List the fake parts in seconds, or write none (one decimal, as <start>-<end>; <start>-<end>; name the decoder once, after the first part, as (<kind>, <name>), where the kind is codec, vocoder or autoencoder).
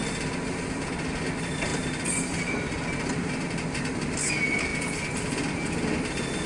1.7-4.3 (vocoder, BigVGAN v2)